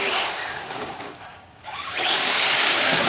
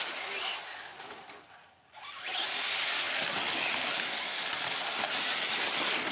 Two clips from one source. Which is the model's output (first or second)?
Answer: first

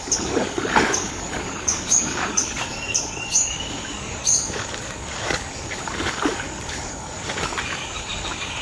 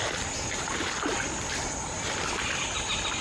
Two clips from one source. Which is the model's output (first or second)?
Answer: first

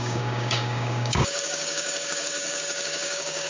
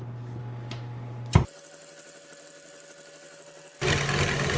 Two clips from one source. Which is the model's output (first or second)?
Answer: first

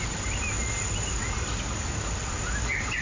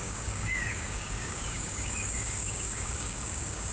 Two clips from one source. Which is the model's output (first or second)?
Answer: second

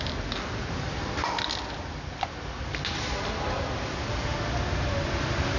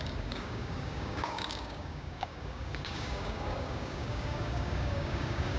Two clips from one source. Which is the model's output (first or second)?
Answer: second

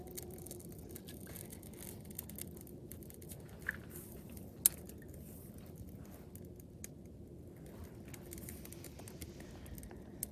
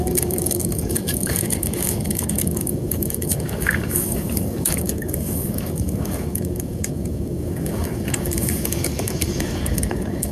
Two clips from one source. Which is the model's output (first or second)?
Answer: second